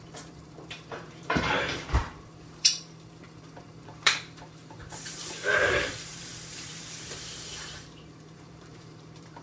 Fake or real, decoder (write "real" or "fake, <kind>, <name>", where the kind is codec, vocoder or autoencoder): fake, vocoder, BigVGAN v2